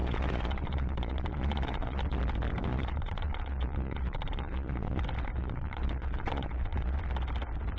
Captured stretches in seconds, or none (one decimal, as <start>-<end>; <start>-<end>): 2.0-2.7; 5.0-5.4; 7.0-7.8